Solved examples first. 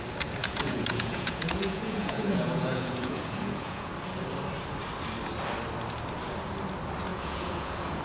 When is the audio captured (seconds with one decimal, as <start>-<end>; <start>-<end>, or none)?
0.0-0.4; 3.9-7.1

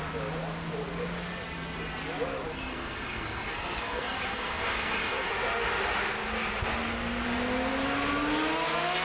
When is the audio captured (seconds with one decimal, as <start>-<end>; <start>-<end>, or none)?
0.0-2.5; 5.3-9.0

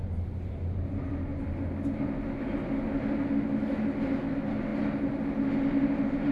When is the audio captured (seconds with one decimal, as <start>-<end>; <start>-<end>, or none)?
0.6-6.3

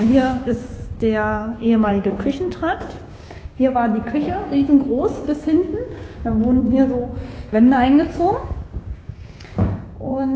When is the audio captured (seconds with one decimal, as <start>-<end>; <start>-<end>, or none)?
none

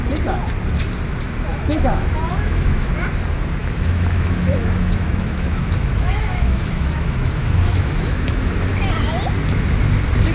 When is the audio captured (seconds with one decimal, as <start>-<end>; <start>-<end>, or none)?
0.0-1.5; 2.9-3.6; 8.7-10.3

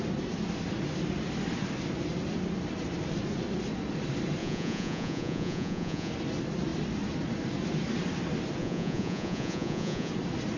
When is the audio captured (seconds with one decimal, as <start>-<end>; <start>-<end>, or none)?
0.0-4.4; 6.1-8.6; 10.1-10.6